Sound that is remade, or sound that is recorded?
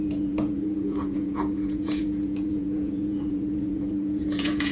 remade